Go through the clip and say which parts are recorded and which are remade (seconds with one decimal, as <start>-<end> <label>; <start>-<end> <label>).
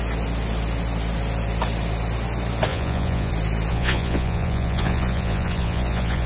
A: 0.0-2.7 recorded; 2.7-3.3 remade; 3.3-3.7 recorded; 3.7-6.3 remade